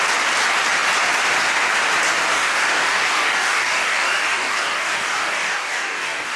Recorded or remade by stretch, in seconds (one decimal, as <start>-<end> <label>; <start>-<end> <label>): 0.0-2.3 recorded; 2.3-6.4 remade